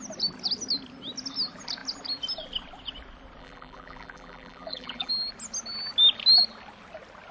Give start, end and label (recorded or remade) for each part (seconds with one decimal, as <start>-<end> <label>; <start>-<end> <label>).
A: 0.0-3.4 recorded; 3.4-5.1 remade; 5.1-7.3 recorded